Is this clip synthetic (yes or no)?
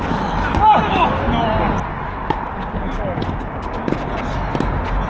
no